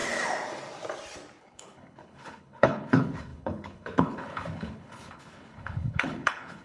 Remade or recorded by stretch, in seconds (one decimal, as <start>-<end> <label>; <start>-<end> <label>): 0.0-1.4 recorded; 1.4-6.6 remade